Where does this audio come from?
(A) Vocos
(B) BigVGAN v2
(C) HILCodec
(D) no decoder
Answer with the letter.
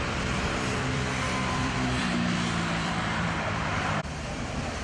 B